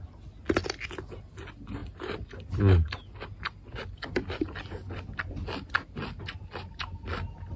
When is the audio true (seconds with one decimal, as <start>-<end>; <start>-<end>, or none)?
0.0-7.6